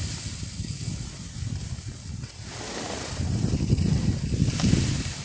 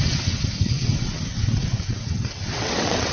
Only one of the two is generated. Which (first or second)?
second